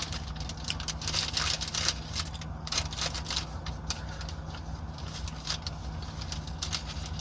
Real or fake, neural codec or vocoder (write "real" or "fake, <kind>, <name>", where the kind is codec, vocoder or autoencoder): real